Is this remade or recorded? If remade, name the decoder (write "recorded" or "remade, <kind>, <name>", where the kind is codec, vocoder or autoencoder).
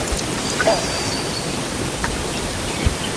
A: recorded